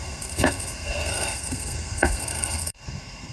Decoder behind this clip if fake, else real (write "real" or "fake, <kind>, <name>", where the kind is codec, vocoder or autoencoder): fake, codec, SNAC